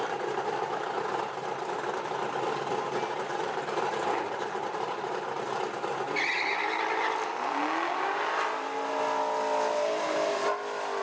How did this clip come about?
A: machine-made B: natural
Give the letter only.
B